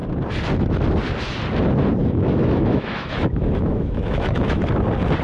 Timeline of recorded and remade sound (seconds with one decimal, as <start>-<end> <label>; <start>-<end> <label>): 0.0-2.0 recorded; 2.0-4.6 remade; 4.6-5.2 recorded